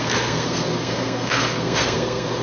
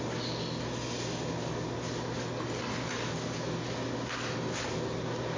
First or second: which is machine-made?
first